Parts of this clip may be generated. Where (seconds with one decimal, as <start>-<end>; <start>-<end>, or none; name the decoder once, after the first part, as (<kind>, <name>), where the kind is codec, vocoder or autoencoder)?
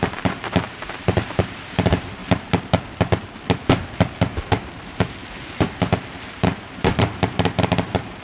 0.0-2.2 (vocoder, BigVGAN v2); 4.2-8.2